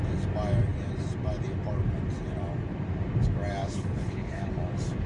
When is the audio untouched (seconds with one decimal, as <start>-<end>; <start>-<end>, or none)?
0.0-3.6; 4.5-5.1